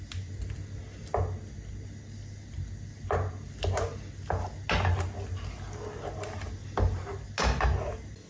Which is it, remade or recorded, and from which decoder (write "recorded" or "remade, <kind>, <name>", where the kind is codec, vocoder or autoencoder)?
recorded